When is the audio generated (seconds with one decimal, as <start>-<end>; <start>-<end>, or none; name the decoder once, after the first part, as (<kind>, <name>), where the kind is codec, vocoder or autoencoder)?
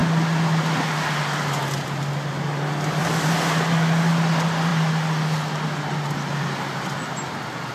none